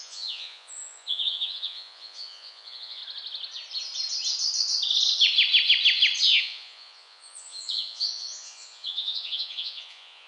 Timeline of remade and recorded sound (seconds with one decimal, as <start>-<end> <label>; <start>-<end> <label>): 0.0-3.0 remade; 3.0-6.4 recorded; 6.4-10.3 remade